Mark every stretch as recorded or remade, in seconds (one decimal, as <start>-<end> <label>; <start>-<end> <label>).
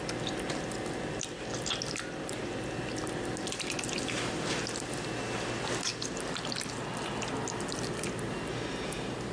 0.0-9.3 recorded